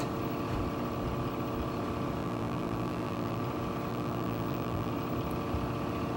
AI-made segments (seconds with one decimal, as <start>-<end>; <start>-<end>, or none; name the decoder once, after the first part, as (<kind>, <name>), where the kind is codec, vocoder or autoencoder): 2.2-3.4 (vocoder, BigVGAN v2); 3.9-4.9